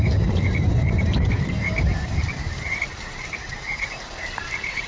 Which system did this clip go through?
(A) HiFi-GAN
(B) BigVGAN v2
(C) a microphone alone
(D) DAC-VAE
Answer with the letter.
B